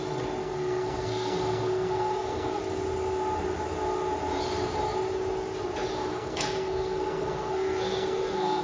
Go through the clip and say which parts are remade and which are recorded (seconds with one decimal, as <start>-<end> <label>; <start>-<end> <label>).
0.0-0.4 recorded; 0.4-2.6 remade; 2.6-6.1 recorded; 6.1-8.6 remade